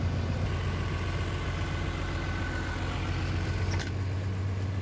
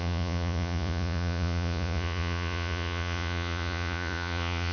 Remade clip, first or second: second